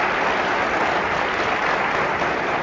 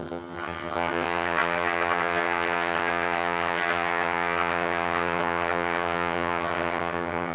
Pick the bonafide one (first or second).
first